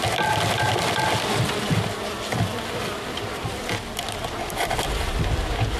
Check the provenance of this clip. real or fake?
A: real